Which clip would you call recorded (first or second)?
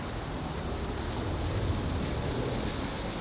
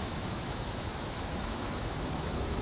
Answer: first